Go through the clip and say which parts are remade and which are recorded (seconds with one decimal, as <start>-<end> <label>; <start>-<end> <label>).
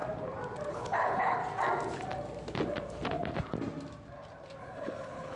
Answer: 0.0-0.7 recorded; 0.7-1.4 remade; 1.4-4.6 recorded; 4.6-5.4 remade